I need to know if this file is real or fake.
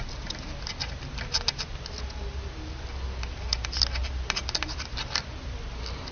real